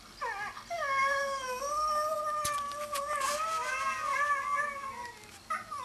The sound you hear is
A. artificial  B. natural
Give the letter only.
B